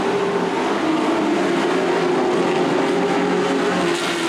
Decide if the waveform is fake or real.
real